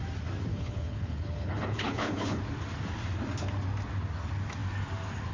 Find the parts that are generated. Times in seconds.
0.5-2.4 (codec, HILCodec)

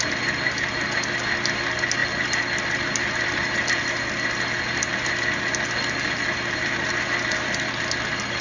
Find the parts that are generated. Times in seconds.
none

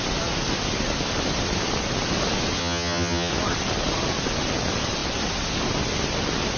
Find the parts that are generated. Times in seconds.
2.6-3.3 (vocoder, HiFi-GAN)